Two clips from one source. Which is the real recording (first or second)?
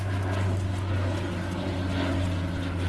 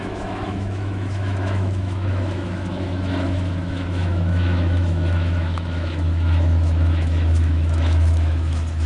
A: first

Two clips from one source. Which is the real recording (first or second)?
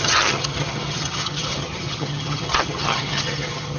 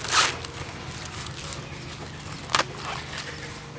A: second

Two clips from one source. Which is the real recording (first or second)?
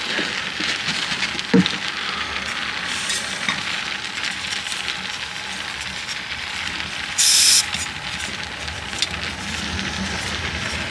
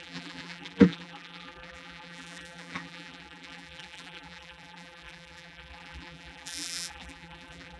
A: first